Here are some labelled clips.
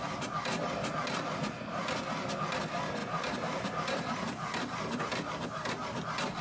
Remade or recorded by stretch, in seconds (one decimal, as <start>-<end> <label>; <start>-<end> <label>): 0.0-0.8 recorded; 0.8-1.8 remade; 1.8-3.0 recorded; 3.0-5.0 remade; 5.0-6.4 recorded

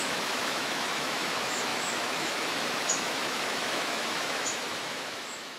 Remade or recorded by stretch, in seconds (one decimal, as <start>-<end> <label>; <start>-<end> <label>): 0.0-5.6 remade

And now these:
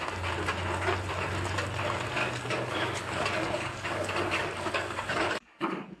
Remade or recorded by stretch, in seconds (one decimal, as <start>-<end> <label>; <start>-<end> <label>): 0.0-2.2 recorded; 2.2-6.0 remade

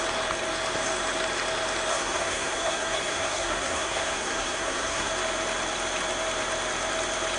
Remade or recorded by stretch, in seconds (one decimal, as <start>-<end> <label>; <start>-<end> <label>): 0.0-1.9 recorded; 1.9-5.1 remade; 5.1-7.4 recorded

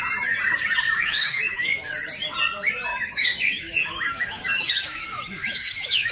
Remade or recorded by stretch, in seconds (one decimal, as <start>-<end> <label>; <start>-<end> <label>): 0.0-1.0 recorded; 1.0-1.9 remade; 1.9-2.9 recorded; 2.9-6.1 remade

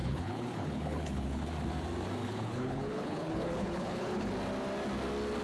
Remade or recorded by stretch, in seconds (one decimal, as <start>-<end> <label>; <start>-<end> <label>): 0.0-1.5 remade; 1.5-2.2 recorded; 2.2-4.3 remade; 4.3-5.4 recorded

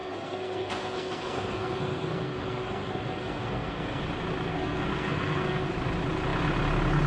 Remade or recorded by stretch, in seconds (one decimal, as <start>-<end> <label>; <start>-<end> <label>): 0.0-4.0 remade; 4.0-4.5 recorded; 4.5-5.7 remade; 5.7-7.1 recorded

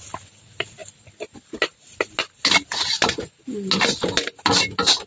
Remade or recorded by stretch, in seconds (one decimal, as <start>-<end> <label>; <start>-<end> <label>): 0.0-5.1 recorded